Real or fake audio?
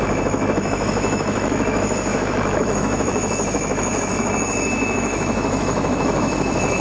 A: fake